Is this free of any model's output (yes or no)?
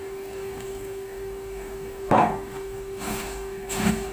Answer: no